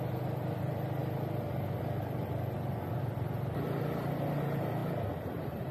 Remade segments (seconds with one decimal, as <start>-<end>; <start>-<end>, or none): none